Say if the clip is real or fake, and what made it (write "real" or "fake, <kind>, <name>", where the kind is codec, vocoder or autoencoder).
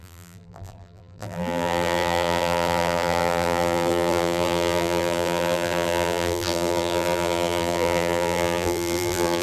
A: fake, vocoder, BigVGAN v2